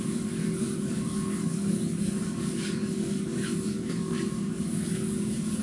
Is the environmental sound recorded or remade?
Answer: remade